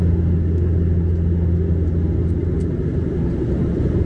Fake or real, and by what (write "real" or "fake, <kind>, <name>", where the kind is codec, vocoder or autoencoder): real